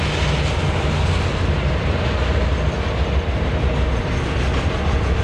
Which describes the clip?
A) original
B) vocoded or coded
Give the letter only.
A